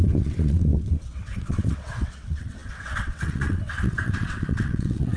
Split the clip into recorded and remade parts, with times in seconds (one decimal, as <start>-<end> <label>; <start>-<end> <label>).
0.0-5.2 remade